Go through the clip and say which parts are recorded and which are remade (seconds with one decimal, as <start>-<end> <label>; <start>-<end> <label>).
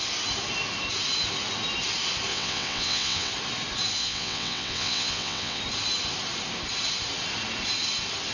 0.0-2.3 recorded; 2.3-3.3 remade; 3.3-4.0 recorded; 4.0-5.6 remade; 5.6-8.3 recorded